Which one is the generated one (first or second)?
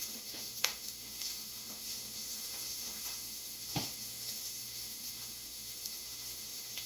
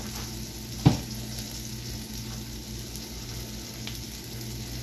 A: first